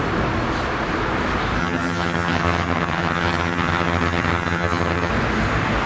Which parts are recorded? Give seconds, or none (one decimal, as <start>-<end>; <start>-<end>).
0.0-1.6; 5.1-5.9